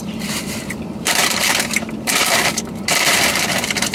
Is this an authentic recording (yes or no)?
no